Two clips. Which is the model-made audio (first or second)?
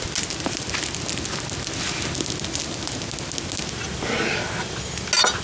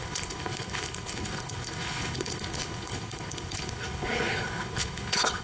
second